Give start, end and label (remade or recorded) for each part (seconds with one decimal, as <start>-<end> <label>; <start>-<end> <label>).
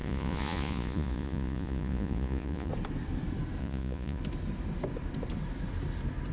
0.0-2.7 remade; 2.7-3.6 recorded; 3.6-4.2 remade; 4.2-6.3 recorded